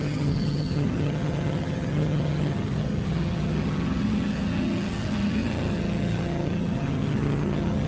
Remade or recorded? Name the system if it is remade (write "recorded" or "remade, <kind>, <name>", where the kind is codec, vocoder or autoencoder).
remade, vocoder, HiFi-GAN